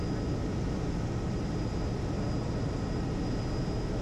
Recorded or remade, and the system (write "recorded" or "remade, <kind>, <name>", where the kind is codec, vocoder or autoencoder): recorded